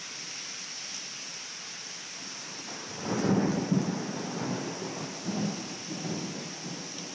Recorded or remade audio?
recorded